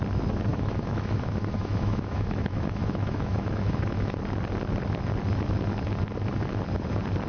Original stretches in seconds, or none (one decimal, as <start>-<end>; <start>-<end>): 0.0-0.5; 4.2-7.3